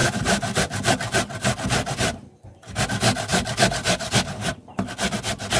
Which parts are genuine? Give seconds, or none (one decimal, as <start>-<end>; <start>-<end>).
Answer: 2.8-3.3; 4.9-5.6

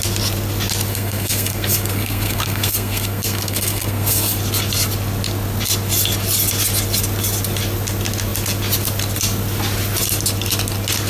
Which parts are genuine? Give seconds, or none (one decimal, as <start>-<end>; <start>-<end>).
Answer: 0.0-0.9; 4.4-11.1

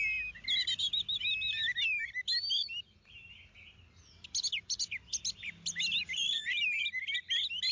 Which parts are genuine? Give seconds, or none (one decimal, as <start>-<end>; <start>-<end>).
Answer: 0.0-6.0; 6.8-7.7

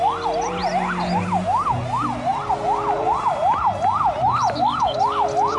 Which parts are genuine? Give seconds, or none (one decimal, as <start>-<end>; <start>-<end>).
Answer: 0.0-5.6

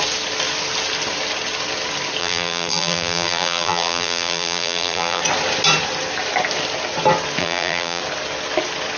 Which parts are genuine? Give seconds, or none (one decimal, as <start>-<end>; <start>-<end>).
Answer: 0.0-2.2; 5.2-7.4; 8.0-9.0